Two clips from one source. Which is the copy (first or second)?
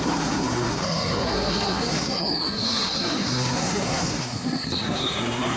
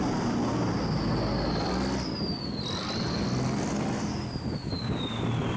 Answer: first